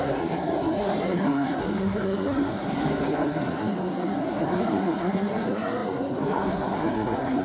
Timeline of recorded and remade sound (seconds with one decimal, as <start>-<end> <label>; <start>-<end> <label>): 0.0-7.4 remade